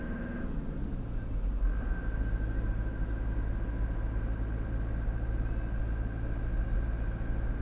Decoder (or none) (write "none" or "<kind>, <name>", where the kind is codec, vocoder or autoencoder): none